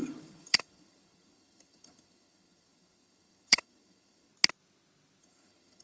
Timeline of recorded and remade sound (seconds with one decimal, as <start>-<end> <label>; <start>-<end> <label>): 0.0-4.3 remade; 4.3-5.2 recorded; 5.2-5.8 remade